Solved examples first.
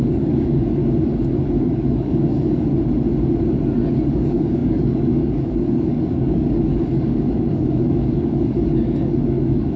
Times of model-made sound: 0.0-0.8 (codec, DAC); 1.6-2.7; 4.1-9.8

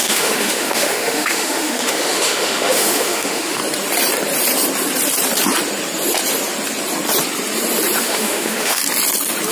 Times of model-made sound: 0.0-3.6 (autoencoder, DAC-VAE); 8.0-8.8

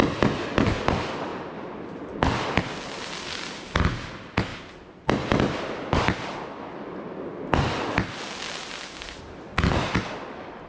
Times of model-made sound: none

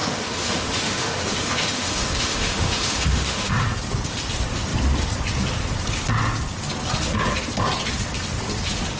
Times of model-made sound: 0.0-3.5 (autoencoder, DAC-VAE)

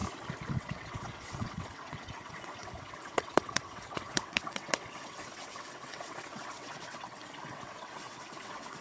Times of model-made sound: 0.5-8.8 (vocoder, WaveNeXt)

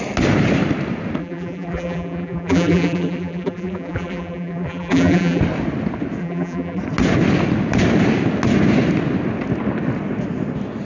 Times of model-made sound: 1.2-5.4 (vocoder, BigVGAN v2); 6.2-6.8